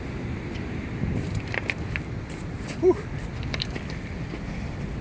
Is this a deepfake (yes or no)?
no